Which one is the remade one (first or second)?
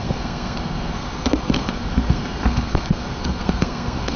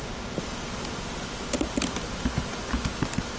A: first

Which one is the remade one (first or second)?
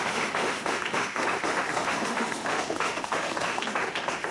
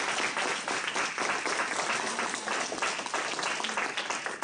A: first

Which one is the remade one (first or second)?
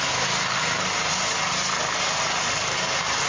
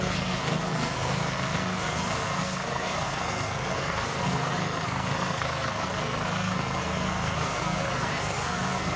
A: second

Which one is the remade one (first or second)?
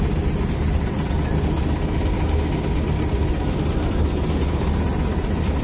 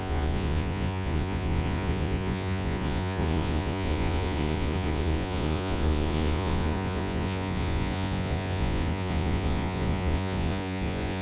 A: second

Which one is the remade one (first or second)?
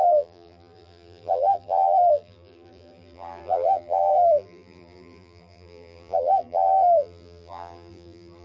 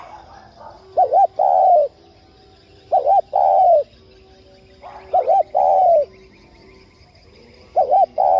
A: first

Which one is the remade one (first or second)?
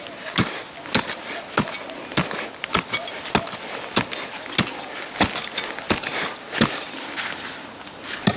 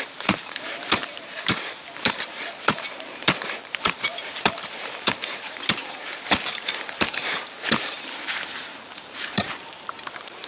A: second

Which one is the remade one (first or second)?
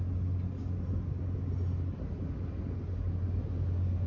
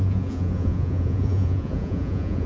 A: second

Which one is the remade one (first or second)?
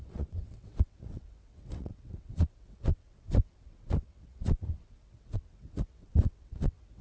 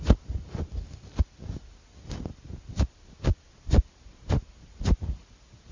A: first